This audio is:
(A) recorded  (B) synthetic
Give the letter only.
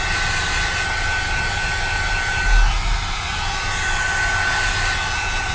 A